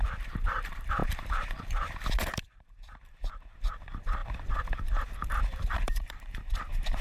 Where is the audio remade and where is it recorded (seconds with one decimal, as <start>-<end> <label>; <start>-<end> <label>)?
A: 0.0-7.0 remade